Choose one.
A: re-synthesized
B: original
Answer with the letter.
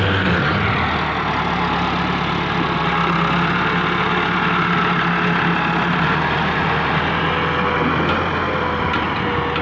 B